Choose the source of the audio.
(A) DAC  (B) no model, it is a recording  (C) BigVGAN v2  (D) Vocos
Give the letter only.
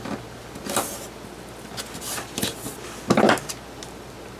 B